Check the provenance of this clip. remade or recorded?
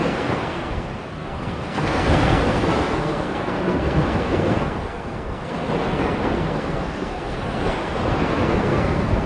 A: remade